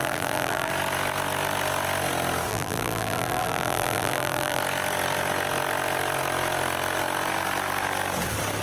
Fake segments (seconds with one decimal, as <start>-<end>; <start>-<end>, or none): 0.0-0.7; 2.5-4.6